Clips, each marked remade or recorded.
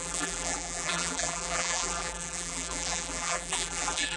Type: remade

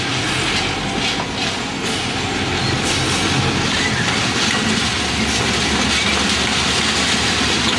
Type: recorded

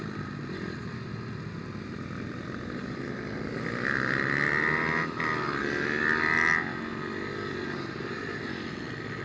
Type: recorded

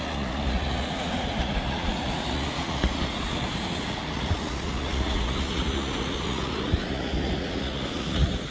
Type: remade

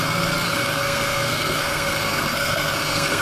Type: remade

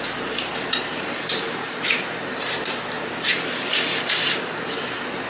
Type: remade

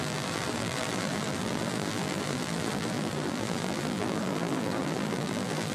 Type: remade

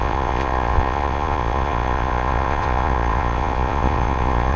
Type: remade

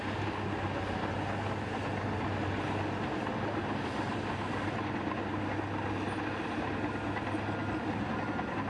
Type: recorded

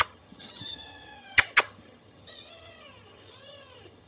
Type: remade